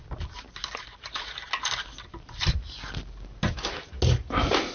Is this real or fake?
real